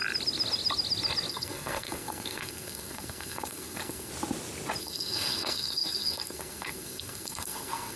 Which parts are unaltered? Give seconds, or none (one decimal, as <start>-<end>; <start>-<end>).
0.0-1.3; 4.1-4.8